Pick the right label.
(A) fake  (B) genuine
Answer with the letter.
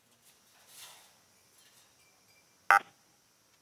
B